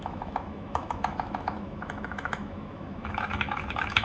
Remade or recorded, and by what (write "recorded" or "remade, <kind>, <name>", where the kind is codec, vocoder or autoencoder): remade, autoencoder, DAC-VAE